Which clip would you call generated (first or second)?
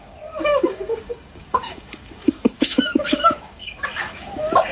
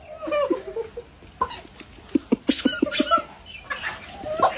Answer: first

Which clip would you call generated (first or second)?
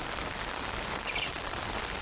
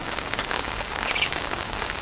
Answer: second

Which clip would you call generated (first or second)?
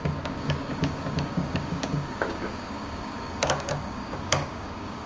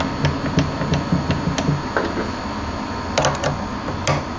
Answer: first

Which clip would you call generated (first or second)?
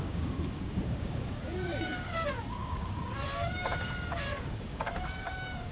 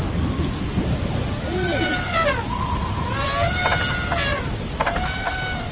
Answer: first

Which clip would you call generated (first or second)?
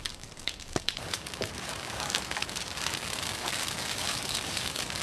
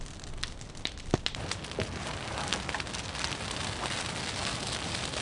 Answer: first